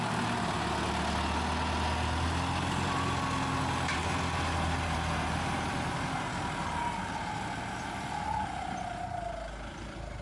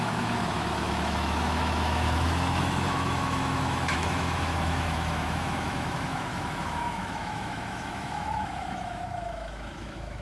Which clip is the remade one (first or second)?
second